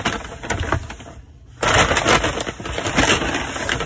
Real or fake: real